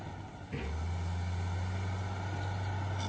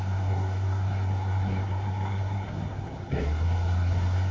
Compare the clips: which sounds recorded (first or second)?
first